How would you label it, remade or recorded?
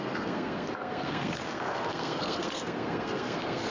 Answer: remade